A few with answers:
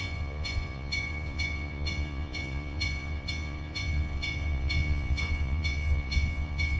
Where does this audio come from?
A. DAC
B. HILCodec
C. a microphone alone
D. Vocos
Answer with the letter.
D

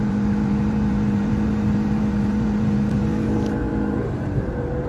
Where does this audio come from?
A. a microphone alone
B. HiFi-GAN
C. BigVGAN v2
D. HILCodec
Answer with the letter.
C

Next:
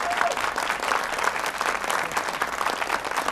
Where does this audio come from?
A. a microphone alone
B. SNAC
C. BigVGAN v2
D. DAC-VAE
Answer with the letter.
A